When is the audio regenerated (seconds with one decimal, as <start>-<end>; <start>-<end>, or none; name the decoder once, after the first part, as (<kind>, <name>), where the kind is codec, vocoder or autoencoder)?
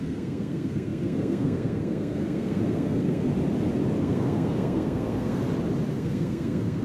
0.0-3.3 (codec, SNAC); 4.0-5.4; 5.9-6.8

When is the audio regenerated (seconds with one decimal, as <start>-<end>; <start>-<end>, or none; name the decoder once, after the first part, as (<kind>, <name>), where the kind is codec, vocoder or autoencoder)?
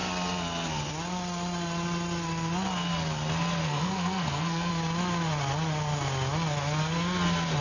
3.6-4.7 (codec, SNAC)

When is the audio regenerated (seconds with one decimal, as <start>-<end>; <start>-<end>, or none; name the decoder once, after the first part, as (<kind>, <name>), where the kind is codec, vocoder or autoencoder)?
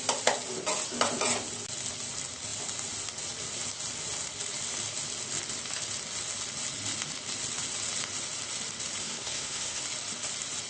9.0-9.8 (codec, SNAC)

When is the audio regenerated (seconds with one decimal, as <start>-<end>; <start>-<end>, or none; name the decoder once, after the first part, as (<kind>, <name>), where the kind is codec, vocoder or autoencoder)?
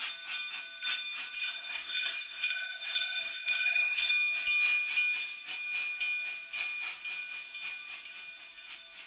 1.4-4.1 (codec, SNAC)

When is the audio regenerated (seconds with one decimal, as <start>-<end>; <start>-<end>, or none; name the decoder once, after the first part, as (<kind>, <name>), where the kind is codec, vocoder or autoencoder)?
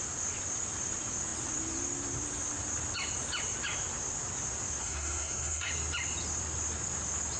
4.8-5.7 (codec, SNAC)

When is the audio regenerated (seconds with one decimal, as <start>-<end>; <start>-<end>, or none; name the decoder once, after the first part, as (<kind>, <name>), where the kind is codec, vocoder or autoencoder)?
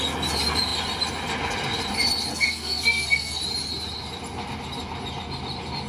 2.3-3.4 (codec, SNAC)